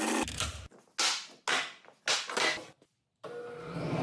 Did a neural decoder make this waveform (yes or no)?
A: no